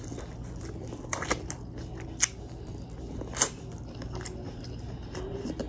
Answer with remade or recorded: recorded